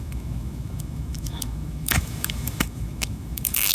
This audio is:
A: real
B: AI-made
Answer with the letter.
B